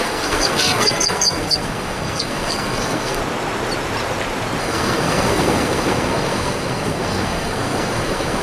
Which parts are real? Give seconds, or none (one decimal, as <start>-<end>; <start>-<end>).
3.2-4.6